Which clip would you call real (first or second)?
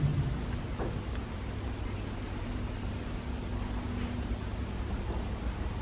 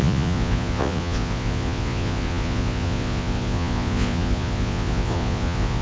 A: first